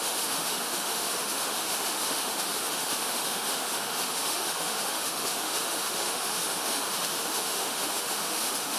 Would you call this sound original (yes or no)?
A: no